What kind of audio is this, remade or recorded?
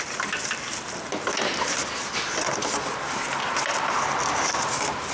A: recorded